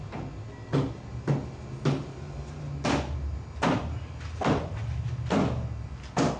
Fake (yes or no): no